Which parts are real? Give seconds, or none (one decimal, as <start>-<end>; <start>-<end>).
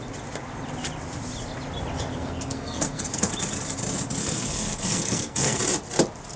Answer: 0.0-2.1; 3.3-4.2; 5.6-6.4